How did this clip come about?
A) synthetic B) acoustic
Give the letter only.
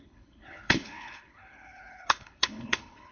A